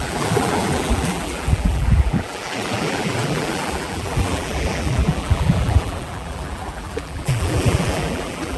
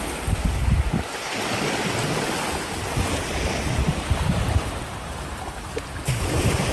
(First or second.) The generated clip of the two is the first